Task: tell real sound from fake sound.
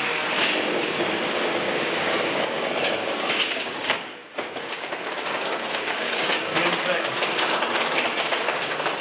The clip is fake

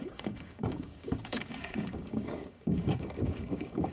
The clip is fake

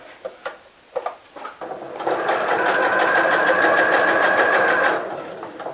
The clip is real